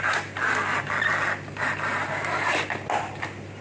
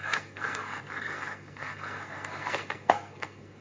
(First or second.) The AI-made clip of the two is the second